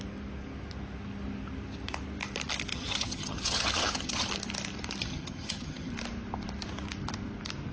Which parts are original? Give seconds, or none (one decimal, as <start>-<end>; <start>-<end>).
0.0-2.7; 4.3-5.0; 5.9-7.7